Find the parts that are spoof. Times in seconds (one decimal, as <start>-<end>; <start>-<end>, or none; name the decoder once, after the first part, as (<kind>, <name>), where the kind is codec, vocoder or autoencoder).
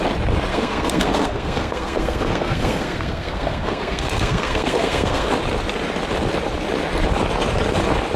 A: 0.5-5.3 (codec, SNAC)